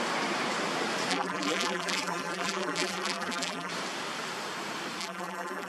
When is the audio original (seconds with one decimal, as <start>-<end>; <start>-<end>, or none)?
0.0-1.1; 3.7-5.0